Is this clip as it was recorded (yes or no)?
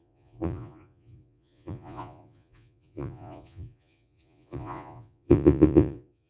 no